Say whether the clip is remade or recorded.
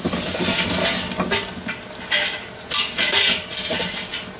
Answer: recorded